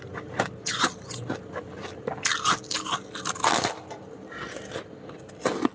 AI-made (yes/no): no